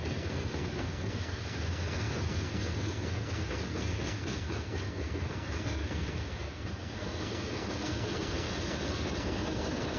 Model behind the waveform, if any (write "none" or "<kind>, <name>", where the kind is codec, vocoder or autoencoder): codec, SNAC